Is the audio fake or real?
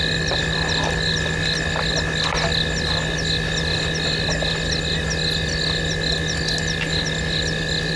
real